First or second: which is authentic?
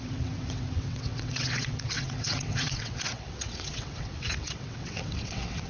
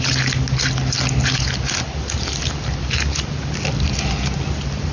second